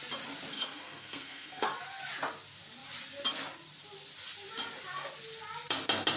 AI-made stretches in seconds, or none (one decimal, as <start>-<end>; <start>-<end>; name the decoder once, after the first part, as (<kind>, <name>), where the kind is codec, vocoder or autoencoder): 0.5-1.7 (codec, SNAC)